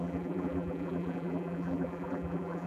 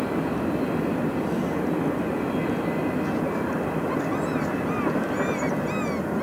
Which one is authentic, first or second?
second